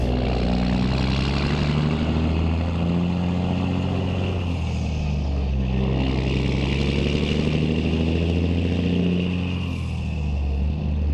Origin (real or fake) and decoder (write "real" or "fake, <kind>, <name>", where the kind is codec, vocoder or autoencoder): real